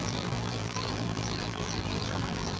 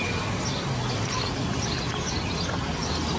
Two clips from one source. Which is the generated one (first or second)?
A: first